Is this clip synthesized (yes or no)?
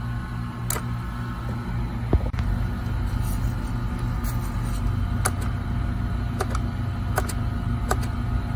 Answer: no